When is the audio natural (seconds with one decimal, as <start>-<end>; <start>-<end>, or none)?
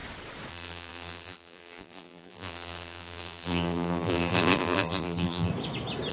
0.0-0.5; 5.5-6.1